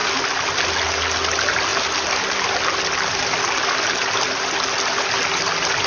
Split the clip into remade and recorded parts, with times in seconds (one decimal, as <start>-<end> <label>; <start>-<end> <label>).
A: 0.0-5.9 recorded